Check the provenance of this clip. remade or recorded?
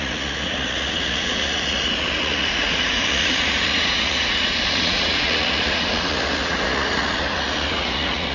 remade